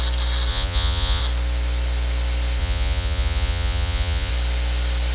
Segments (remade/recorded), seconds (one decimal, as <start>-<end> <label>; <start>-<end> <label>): 0.0-0.5 recorded; 0.5-1.2 remade; 1.2-2.6 recorded; 2.6-4.3 remade; 4.3-5.1 recorded